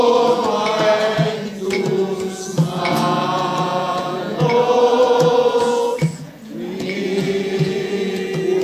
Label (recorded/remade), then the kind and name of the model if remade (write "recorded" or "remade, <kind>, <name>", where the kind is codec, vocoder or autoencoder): remade, vocoder, Vocos